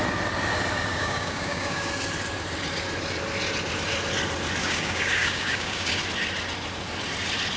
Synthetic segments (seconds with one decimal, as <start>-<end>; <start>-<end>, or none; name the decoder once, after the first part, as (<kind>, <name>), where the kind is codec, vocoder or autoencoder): 0.9-1.9 (codec, DAC); 4.6-6.0